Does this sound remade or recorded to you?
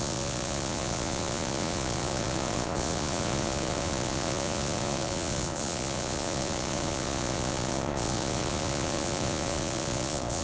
remade